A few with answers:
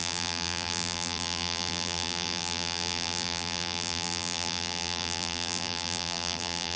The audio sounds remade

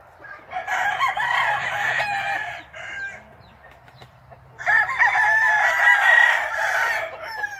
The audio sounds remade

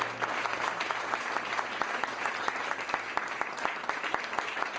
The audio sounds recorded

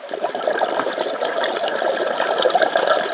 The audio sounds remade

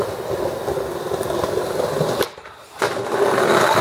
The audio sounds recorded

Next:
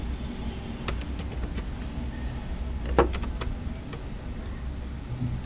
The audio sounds recorded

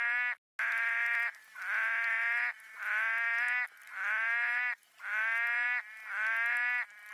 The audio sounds recorded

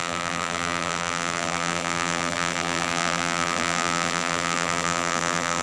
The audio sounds remade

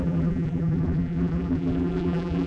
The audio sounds remade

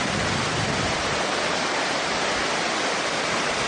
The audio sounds recorded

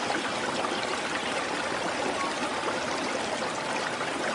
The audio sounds remade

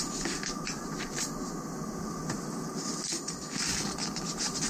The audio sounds recorded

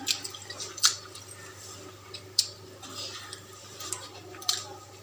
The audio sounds remade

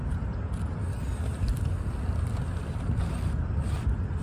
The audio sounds recorded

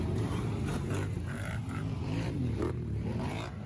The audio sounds remade